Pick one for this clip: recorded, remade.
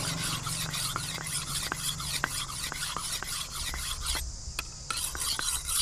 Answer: recorded